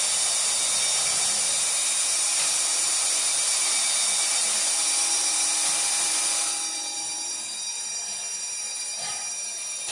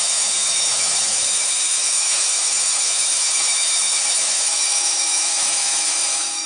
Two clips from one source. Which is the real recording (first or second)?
first